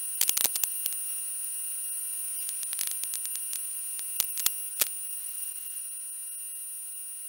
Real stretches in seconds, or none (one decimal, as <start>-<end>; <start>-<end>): 0.0-5.2; 5.8-7.3

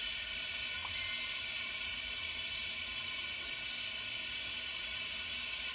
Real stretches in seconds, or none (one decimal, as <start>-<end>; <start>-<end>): 0.0-5.7

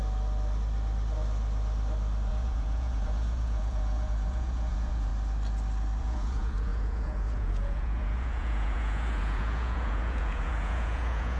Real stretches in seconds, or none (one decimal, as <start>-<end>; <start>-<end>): 0.0-2.3; 5.1-6.0

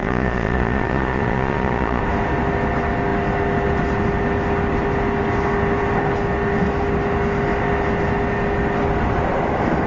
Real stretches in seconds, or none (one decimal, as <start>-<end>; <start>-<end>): 2.0-9.9

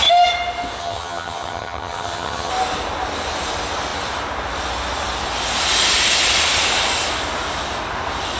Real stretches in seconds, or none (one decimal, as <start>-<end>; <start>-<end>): 0.0-0.8; 2.5-8.4

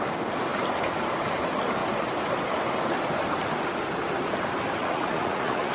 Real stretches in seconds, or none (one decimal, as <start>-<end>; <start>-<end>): 0.0-4.8